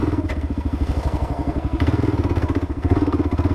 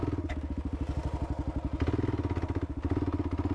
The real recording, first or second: second